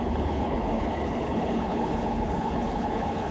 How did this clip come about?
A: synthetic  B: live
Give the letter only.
A